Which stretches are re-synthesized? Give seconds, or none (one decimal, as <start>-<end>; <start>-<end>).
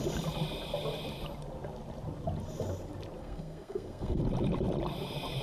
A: 3.2-4.2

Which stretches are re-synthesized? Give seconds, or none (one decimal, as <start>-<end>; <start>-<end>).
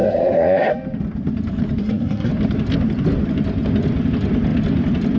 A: 0.0-0.7; 1.8-2.3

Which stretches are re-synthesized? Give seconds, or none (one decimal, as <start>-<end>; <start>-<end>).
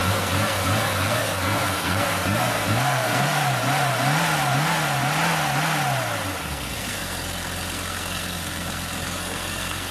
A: 0.0-3.4; 6.4-9.9